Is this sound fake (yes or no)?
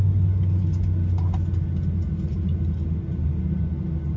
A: no